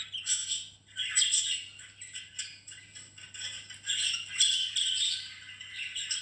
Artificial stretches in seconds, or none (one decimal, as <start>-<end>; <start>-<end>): none